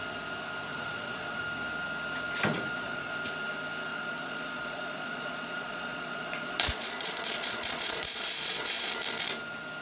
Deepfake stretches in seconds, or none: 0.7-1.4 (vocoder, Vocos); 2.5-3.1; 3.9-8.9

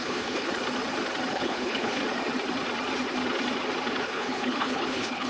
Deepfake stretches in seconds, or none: 0.0-0.5 (codec, HILCodec); 1.3-2.0; 4.0-5.3